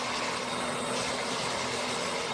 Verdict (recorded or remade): recorded